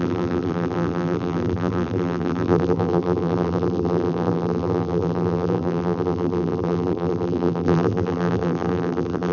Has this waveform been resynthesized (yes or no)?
yes